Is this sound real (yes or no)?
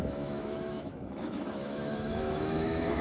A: no